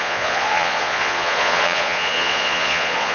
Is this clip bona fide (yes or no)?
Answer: no